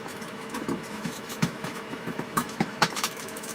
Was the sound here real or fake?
fake